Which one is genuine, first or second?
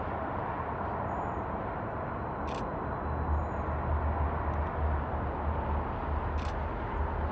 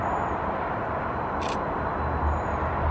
first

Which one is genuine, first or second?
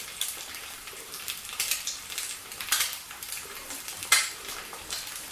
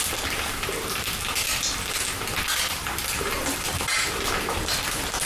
second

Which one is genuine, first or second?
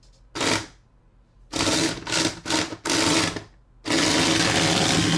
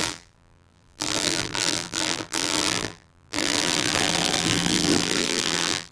first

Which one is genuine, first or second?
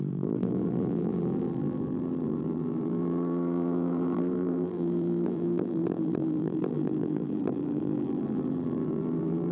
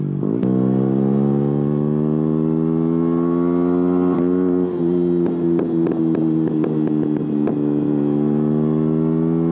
second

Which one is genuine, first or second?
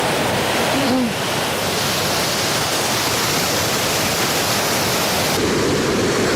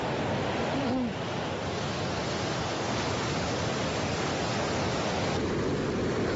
second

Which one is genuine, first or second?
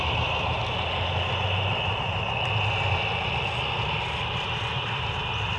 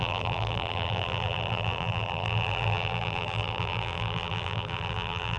first